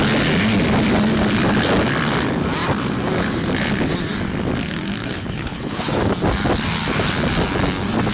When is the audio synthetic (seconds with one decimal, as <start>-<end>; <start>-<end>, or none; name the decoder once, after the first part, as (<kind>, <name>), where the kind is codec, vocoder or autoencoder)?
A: 5.0-6.0 (codec, HILCodec)